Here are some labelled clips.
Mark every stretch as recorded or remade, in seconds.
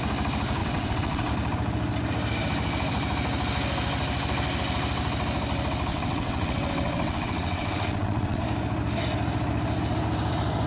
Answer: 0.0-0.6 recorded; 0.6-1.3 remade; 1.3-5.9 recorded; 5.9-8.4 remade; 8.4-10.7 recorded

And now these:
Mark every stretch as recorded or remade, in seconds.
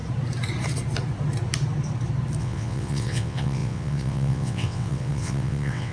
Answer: 0.0-2.4 recorded; 2.4-5.9 remade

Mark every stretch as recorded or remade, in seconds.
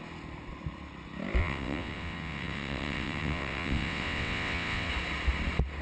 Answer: 0.0-1.4 recorded; 1.4-4.9 remade; 4.9-5.8 recorded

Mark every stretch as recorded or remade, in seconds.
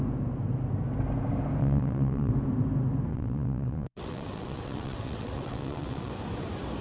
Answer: 0.0-1.6 recorded; 1.6-2.3 remade; 2.3-3.1 recorded; 3.1-6.1 remade; 6.1-6.8 recorded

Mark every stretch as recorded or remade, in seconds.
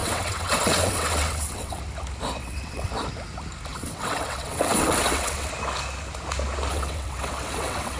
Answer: 0.0-1.8 remade; 1.8-2.4 recorded; 2.4-2.9 remade; 2.9-3.7 recorded; 3.7-5.5 remade; 5.5-6.7 recorded; 6.7-8.0 remade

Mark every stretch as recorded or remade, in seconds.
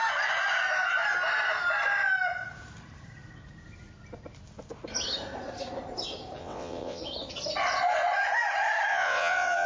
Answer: 0.0-6.4 recorded; 6.4-7.0 remade; 7.0-8.9 recorded; 8.9-9.7 remade